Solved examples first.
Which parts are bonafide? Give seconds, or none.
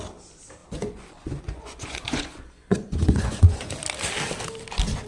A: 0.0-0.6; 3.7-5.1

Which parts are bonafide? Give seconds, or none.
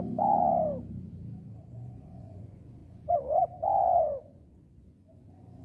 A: 0.5-1.7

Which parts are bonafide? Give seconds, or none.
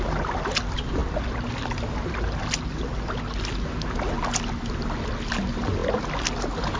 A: 0.0-6.8